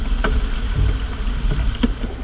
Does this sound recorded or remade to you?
recorded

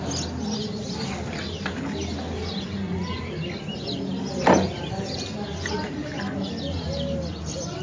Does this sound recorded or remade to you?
recorded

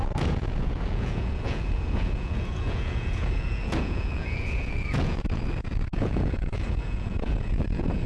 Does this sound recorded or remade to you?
remade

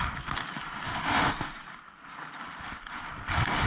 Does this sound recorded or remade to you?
recorded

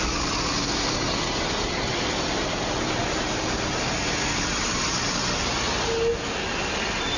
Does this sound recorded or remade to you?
recorded